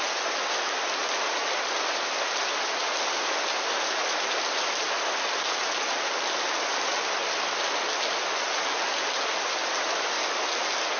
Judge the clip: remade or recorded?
recorded